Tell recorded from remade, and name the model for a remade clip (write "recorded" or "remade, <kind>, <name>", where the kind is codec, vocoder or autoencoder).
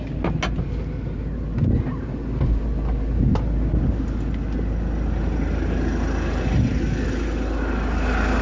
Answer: recorded